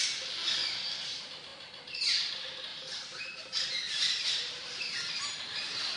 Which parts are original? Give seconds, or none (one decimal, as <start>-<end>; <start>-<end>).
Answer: 0.0-2.7